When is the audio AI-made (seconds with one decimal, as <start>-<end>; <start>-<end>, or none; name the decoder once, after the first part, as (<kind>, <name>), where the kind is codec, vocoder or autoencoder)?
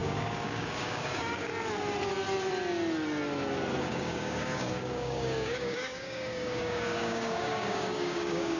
0.0-1.5 (codec, DAC); 3.8-8.6